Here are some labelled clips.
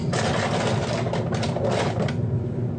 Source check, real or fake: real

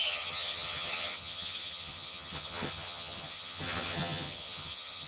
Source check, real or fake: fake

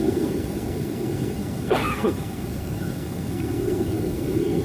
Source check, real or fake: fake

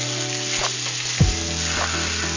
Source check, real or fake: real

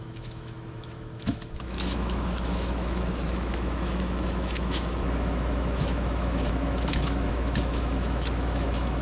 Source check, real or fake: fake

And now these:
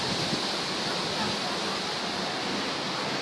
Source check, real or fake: real